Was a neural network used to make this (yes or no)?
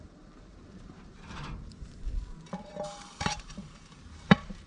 yes